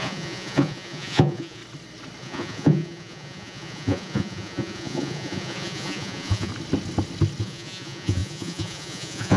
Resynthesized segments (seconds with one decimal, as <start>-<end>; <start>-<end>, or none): 0.0-1.6; 2.2-6.5; 7.4-9.4